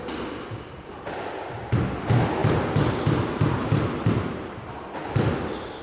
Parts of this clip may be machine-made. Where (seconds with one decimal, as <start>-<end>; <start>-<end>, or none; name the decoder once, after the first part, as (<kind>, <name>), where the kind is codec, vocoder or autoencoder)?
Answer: 2.4-4.6 (vocoder, BigVGAN v2)